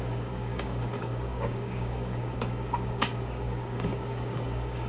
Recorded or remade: remade